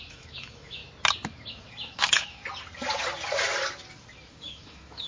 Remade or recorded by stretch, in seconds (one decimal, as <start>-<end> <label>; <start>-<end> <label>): 0.0-0.8 remade; 0.8-1.5 recorded; 1.5-2.4 remade; 2.4-4.3 recorded; 4.3-5.1 remade